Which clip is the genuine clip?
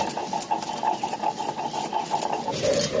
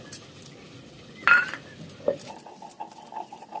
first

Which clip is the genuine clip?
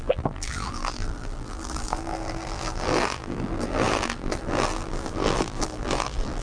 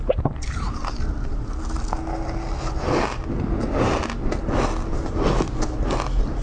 second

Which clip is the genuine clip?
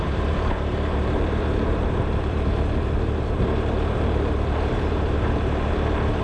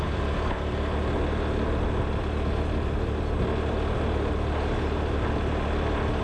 second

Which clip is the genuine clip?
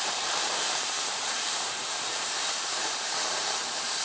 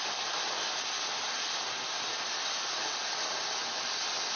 second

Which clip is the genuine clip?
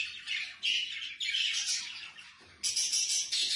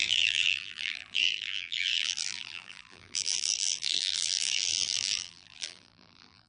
first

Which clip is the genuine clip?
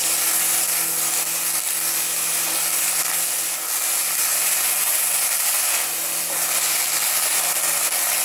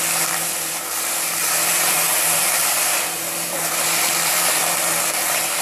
first